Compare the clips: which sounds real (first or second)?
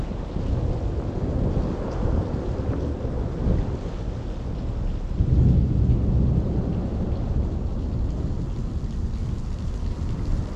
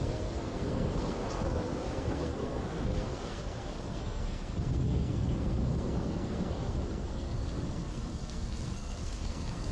first